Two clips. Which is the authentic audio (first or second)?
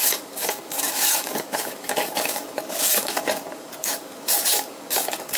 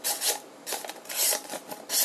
second